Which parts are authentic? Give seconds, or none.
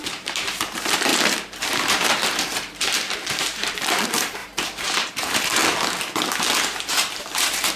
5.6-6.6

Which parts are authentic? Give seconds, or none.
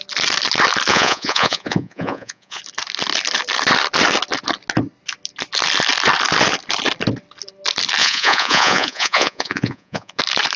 0.0-0.9; 2.6-8.0; 10.2-10.6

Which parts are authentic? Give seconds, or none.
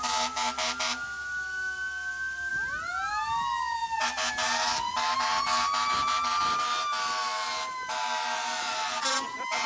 0.0-9.7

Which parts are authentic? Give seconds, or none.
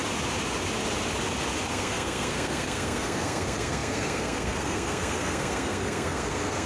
0.0-1.7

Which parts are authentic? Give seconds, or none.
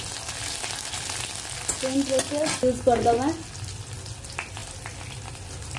0.0-5.8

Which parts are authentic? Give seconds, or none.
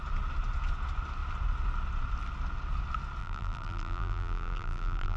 0.0-3.2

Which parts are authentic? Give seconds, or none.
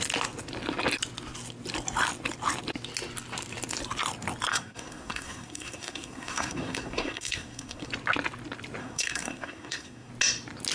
0.0-4.5; 7.9-8.8; 10.1-10.7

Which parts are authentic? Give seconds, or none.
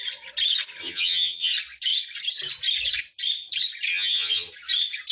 0.0-0.8; 1.5-3.9; 4.5-5.1